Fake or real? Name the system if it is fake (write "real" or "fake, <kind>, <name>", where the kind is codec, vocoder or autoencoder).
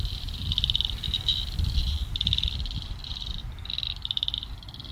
fake, vocoder, BigVGAN v2